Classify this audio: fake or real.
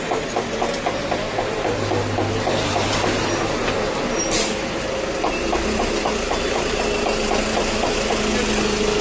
real